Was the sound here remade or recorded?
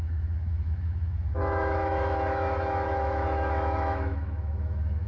remade